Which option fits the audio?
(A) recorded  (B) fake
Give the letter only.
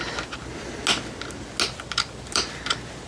A